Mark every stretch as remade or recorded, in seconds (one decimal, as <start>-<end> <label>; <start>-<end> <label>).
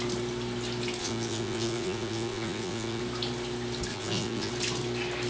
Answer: 0.0-1.0 recorded; 1.0-3.0 remade; 3.0-3.9 recorded; 3.9-4.5 remade; 4.5-5.3 recorded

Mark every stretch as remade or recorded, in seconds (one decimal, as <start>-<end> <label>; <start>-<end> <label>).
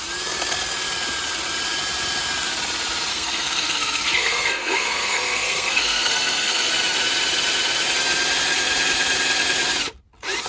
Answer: 0.0-3.1 recorded; 3.1-6.7 remade; 6.7-10.5 recorded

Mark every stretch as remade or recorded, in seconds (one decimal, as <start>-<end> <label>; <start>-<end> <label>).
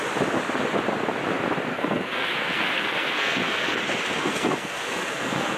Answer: 0.0-1.7 recorded; 1.7-3.8 remade; 3.8-4.2 recorded; 4.2-5.6 remade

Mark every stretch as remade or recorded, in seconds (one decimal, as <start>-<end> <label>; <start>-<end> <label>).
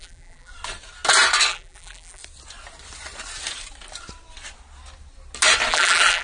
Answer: 0.0-0.5 remade; 0.5-1.5 recorded; 1.5-2.2 remade; 2.2-5.7 recorded; 5.7-6.2 remade